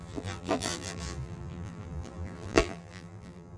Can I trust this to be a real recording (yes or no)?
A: no